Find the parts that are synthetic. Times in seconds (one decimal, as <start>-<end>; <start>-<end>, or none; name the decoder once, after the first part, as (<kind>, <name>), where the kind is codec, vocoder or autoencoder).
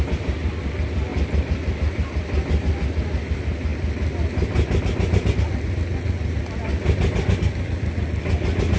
none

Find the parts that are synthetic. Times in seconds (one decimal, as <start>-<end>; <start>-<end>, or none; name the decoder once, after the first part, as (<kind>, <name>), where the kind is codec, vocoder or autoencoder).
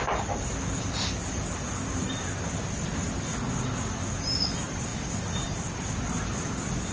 none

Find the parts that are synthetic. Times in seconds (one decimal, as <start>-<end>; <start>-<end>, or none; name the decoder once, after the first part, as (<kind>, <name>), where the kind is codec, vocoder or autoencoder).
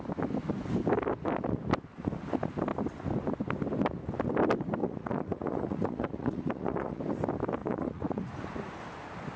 4.8-7.0 (vocoder, Vocos); 7.6-8.2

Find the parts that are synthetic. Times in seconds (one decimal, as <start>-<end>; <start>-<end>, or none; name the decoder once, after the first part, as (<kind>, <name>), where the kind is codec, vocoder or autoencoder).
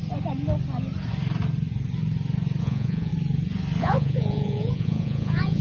2.6-3.1 (vocoder, Vocos); 3.8-5.6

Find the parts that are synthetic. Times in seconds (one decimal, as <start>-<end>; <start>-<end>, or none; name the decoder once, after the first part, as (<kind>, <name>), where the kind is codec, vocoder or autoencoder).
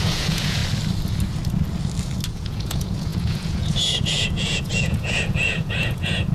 0.0-0.6 (vocoder, Vocos); 2.3-6.3